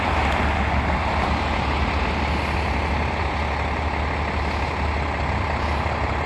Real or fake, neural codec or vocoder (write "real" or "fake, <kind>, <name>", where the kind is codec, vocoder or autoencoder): real